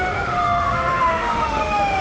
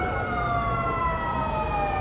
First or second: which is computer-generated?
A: first